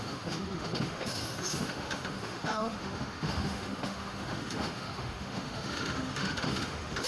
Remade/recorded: remade